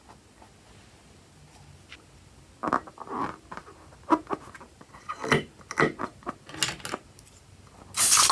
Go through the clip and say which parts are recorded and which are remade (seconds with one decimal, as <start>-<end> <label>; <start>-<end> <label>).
0.0-8.3 recorded